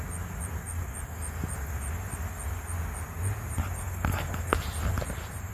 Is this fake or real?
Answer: real